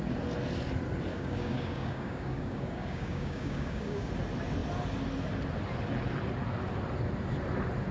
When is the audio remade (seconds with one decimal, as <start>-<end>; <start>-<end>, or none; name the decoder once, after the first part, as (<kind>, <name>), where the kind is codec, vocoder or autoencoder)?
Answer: 1.1-4.1 (codec, DAC)